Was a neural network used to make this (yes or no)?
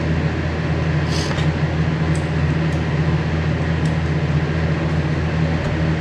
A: no